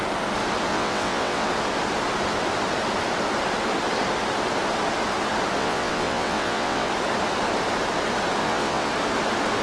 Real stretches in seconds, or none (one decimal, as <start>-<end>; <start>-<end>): 0.0-0.7; 1.5-5.6; 6.9-8.4; 8.9-9.6